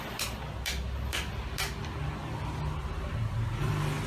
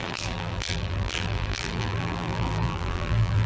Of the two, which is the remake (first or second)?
second